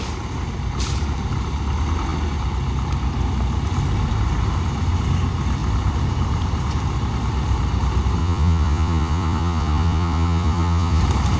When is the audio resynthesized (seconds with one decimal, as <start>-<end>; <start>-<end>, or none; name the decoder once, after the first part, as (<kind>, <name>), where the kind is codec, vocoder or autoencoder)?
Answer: 8.2-11.0 (vocoder, Vocos)